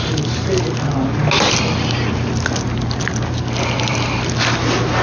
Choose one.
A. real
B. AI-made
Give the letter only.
A